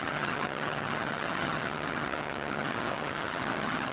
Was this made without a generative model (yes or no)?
no